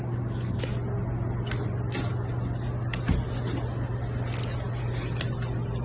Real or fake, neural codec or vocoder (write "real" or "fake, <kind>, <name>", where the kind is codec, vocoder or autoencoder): real